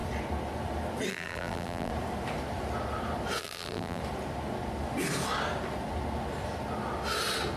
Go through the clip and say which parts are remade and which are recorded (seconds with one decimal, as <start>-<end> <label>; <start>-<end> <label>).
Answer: 0.0-1.1 recorded; 1.1-1.9 remade; 1.9-3.4 recorded; 3.4-4.0 remade; 4.0-7.6 recorded